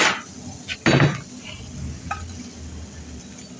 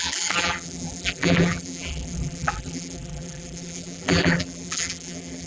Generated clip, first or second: second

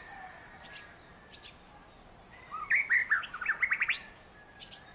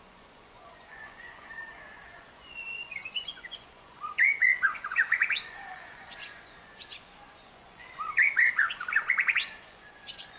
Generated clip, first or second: second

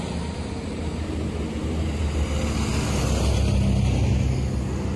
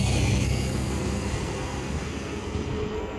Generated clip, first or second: second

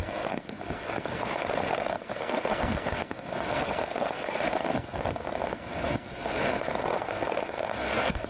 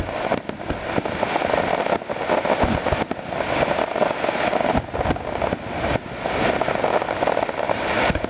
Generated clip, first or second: first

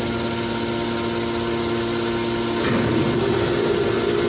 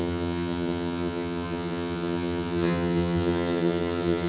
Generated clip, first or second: second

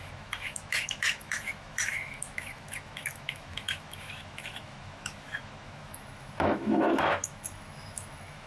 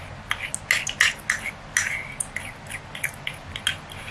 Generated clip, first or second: first